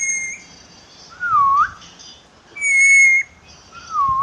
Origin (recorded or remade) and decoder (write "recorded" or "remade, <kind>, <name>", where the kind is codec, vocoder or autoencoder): recorded